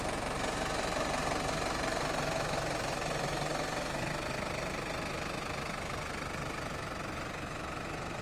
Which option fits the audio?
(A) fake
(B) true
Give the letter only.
B